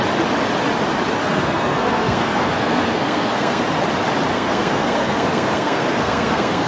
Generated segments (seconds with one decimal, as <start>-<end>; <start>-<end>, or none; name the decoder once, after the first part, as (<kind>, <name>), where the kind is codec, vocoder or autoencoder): 1.2-3.6 (codec, SNAC); 4.3-6.7